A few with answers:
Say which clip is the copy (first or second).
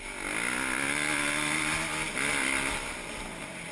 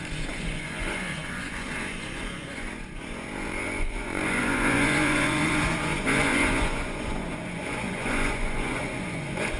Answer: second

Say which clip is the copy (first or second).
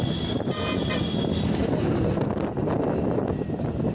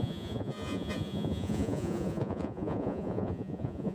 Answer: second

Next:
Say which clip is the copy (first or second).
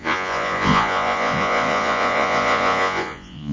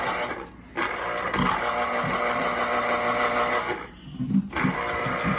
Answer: first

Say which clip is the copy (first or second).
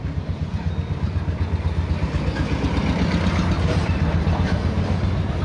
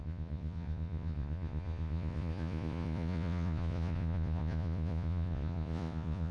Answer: second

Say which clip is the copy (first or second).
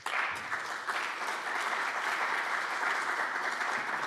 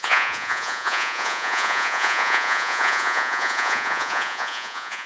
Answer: second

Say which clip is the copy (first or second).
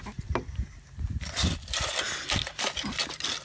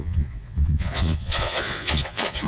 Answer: second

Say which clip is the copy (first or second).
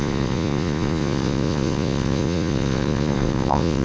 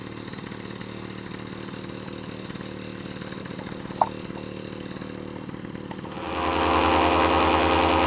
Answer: first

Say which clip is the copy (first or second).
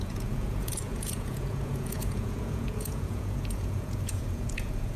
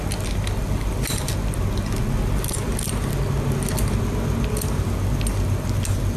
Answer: first